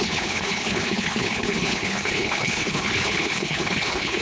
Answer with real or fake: fake